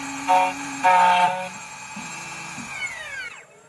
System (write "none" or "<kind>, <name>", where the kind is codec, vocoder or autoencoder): vocoder, BigVGAN v2